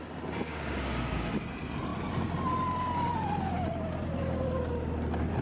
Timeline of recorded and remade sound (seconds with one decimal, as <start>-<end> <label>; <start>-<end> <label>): 0.0-0.5 recorded; 0.5-1.4 remade; 1.4-5.4 recorded